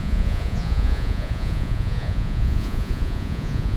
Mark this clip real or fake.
fake